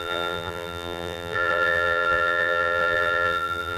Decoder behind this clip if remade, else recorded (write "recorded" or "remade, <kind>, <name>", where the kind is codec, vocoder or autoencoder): remade, vocoder, BigVGAN v2